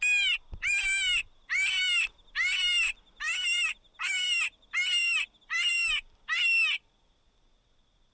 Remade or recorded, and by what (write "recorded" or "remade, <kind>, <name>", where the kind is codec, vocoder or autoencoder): recorded